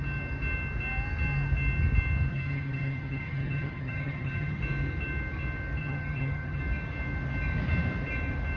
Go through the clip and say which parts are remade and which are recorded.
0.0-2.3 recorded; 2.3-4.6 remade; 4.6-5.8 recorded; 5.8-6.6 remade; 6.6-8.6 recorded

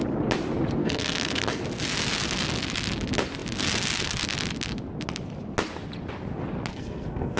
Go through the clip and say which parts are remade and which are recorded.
0.0-0.8 recorded; 0.8-1.6 remade; 1.6-6.7 recorded; 6.7-7.4 remade

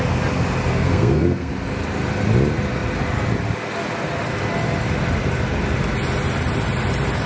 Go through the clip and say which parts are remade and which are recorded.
0.0-0.7 recorded; 0.7-1.5 remade; 1.5-7.3 recorded